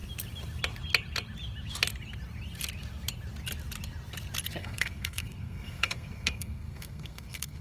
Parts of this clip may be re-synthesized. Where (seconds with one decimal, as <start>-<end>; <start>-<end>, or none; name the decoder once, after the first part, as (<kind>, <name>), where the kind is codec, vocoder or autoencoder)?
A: 4.6-7.6 (codec, SNAC)